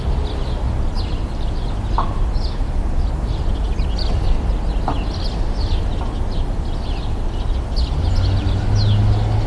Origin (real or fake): real